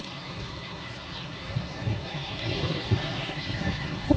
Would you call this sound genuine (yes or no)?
no